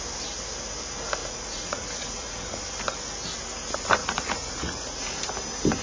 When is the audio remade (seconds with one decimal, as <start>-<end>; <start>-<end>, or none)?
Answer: 1.2-2.6; 4.0-5.2